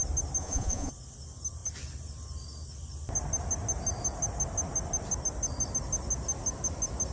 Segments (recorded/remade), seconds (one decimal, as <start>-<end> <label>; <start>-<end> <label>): 0.0-0.4 recorded; 0.4-0.9 remade; 0.9-7.1 recorded